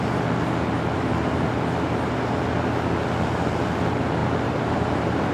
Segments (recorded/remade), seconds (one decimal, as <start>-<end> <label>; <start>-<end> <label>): 0.0-4.2 recorded; 4.2-5.3 remade